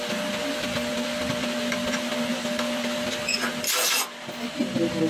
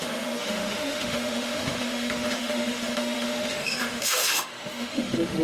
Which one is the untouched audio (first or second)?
first